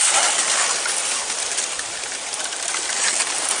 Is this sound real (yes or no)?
yes